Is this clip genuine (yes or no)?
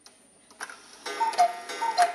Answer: yes